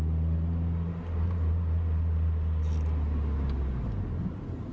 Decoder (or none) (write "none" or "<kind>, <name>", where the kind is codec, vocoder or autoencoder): none